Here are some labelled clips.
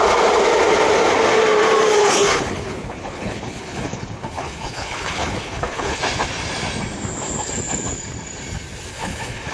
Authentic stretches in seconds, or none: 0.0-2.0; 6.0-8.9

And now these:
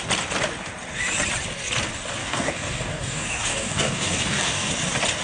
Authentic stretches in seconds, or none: 0.0-2.2; 4.7-5.2

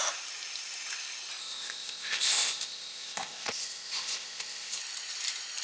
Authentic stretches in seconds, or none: 0.0-1.4; 4.8-5.6

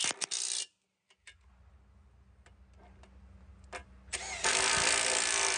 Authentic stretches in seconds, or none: 0.0-5.6

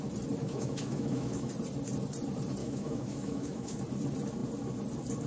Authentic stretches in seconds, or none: 0.0-0.4; 1.5-2.6; 3.8-5.3

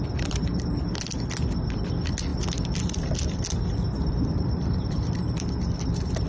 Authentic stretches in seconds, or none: 0.0-2.3

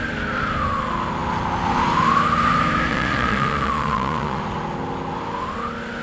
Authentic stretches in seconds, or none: 0.0-2.9; 4.4-6.0